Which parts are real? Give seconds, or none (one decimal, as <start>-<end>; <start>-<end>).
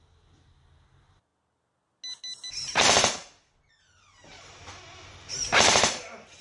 0.0-6.4